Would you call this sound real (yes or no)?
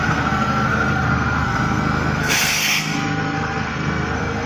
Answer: no